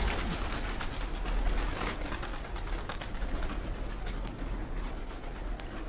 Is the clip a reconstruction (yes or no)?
no